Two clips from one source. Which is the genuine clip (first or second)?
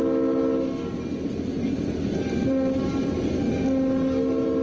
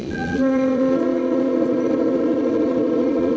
first